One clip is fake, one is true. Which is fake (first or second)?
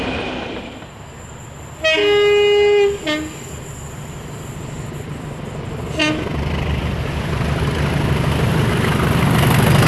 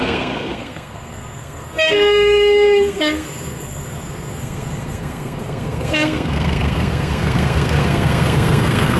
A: second